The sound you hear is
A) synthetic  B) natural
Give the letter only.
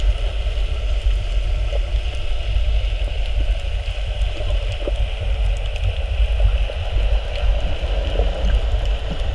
B